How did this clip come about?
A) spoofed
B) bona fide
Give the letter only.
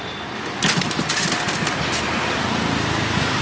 B